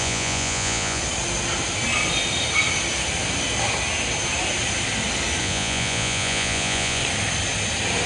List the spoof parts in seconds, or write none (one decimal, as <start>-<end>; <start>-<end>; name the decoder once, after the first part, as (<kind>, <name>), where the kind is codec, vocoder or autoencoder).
0.0-1.0 (vocoder, Vocos); 5.4-7.0